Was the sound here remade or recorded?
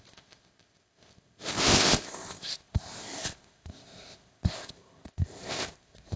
remade